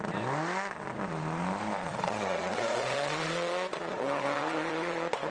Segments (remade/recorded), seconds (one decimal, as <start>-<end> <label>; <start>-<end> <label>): 0.0-1.8 recorded; 1.8-5.3 remade